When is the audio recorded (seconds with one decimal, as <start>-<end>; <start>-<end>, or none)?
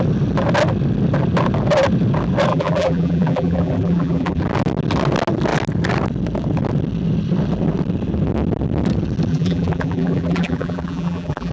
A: 0.0-2.5; 4.4-9.3